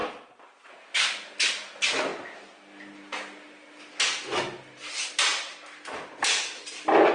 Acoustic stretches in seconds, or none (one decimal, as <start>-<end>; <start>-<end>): 0.0-7.1